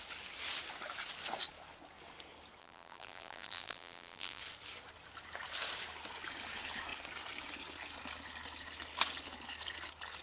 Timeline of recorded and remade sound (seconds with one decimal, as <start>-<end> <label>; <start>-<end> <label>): 0.0-2.6 recorded; 2.6-4.4 remade; 4.4-10.2 recorded

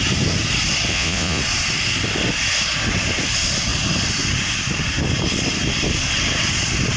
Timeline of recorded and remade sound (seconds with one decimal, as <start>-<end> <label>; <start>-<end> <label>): 0.0-0.9 recorded; 0.9-1.4 remade; 1.4-7.0 recorded

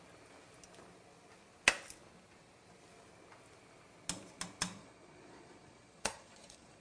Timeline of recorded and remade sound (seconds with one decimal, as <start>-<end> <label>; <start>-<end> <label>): 0.0-4.8 recorded; 4.8-6.8 remade

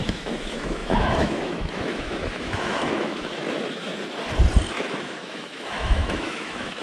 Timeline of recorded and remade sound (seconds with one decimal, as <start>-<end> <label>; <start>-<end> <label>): 0.0-3.9 remade; 3.9-4.7 recorded; 4.7-6.8 remade